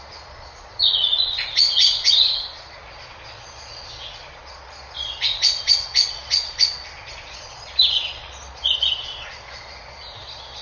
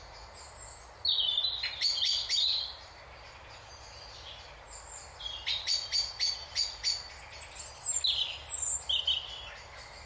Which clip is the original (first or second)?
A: second